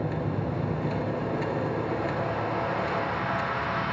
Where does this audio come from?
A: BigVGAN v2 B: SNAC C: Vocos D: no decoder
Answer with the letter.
D